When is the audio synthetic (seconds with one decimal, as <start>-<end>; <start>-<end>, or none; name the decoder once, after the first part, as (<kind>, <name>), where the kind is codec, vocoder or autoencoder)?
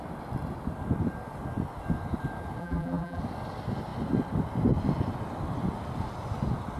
2.6-3.2 (vocoder, BigVGAN v2)